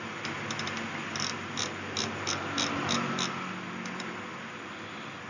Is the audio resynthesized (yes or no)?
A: no